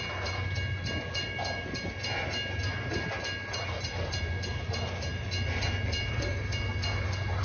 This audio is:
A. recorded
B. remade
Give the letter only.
A